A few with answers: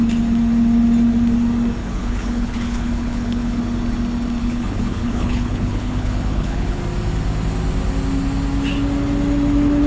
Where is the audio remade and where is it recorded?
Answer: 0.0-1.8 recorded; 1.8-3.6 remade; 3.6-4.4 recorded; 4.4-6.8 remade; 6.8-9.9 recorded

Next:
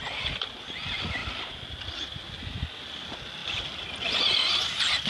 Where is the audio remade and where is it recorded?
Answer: 0.0-5.1 recorded

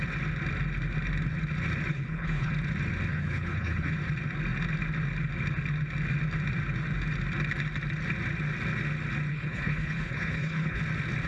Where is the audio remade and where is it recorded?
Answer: 0.0-1.9 recorded; 1.9-2.5 remade; 2.5-3.1 recorded; 3.1-3.9 remade; 3.9-9.3 recorded; 9.3-10.8 remade; 10.8-11.3 recorded

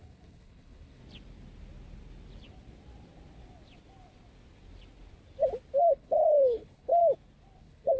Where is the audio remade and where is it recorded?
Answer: 0.0-1.0 remade; 1.0-5.8 recorded; 5.8-7.0 remade; 7.0-7.6 recorded; 7.6-8.0 remade